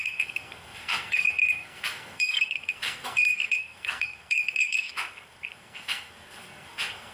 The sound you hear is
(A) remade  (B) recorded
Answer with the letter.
A